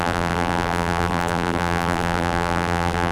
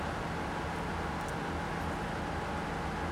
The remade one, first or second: first